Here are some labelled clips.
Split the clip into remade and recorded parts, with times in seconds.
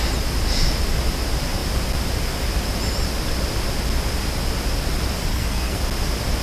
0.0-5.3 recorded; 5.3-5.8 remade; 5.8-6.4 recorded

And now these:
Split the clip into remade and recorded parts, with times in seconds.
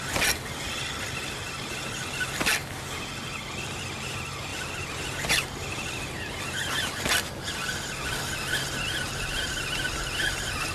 0.0-4.5 recorded; 4.5-6.4 remade; 6.4-10.7 recorded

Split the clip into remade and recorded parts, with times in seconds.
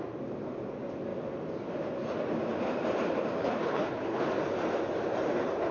0.0-3.4 recorded; 3.4-4.2 remade; 4.2-5.7 recorded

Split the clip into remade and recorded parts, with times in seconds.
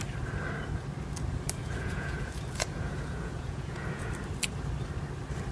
0.0-1.6 recorded; 1.6-4.1 remade; 4.1-5.5 recorded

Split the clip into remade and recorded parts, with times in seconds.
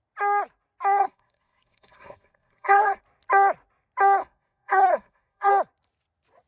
0.0-1.0 recorded; 1.0-3.0 remade; 3.0-4.2 recorded; 4.2-5.5 remade; 5.5-6.5 recorded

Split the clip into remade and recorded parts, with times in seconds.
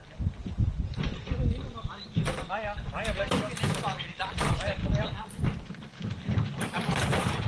0.0-4.3 recorded; 4.3-4.8 remade; 4.8-5.3 recorded; 5.3-7.5 remade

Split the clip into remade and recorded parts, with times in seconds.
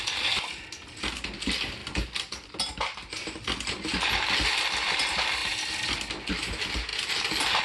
0.0-7.6 recorded